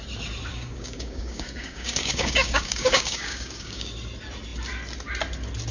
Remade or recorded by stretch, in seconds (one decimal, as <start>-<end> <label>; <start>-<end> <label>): 0.0-0.5 recorded; 0.5-3.9 remade; 3.9-5.7 recorded